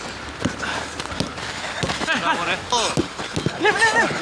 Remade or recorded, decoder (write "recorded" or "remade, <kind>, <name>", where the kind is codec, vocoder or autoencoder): recorded